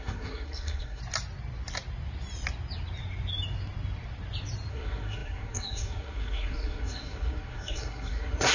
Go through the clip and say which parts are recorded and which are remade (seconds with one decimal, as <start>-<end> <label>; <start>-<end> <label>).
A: 0.0-1.0 remade; 1.0-4.7 recorded; 4.7-8.5 remade